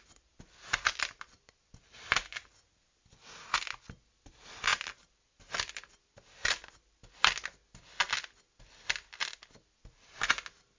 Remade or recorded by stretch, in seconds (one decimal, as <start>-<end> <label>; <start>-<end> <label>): 0.0-10.8 recorded